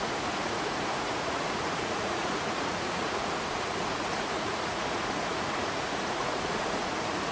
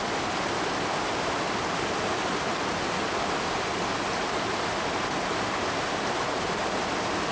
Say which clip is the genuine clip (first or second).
second